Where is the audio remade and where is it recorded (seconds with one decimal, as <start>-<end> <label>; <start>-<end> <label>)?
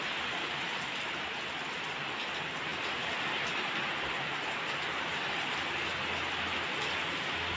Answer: 0.0-7.6 recorded